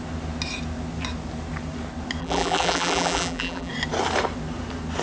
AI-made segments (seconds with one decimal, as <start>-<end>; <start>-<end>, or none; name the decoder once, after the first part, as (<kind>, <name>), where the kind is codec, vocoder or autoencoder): 2.2-3.7 (vocoder, BigVGAN v2)